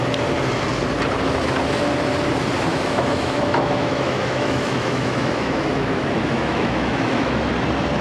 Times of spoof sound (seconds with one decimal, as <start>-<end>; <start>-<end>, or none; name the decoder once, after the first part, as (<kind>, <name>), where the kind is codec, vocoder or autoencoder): 2.7-7.5 (autoencoder, DAC-VAE)